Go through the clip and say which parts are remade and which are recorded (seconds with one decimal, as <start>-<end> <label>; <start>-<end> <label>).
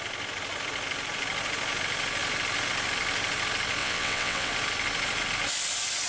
0.0-3.8 recorded; 3.8-4.5 remade; 4.5-6.1 recorded